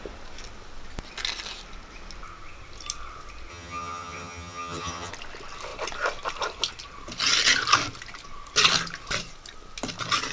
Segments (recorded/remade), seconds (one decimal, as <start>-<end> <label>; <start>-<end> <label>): 0.0-3.5 recorded; 3.5-5.1 remade; 5.1-10.3 recorded

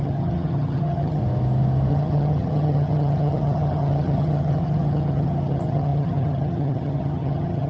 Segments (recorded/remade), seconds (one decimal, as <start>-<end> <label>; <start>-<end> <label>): 0.0-1.2 remade; 1.2-1.9 recorded; 1.9-7.7 remade

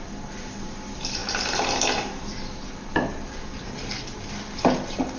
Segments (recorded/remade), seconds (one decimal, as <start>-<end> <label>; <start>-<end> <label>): 0.0-5.2 recorded